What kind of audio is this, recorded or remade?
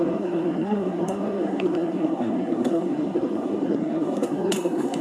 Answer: remade